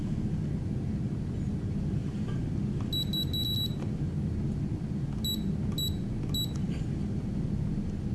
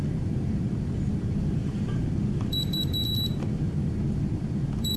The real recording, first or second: first